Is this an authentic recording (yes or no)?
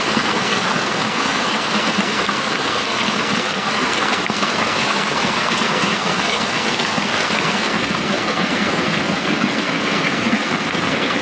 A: no